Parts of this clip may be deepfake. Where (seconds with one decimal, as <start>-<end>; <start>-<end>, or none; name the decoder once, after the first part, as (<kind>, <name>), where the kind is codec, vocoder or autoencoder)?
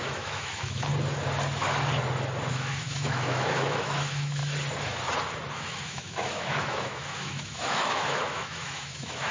0.0-0.9 (autoencoder, DAC-VAE); 2.5-4.4; 5.5-9.3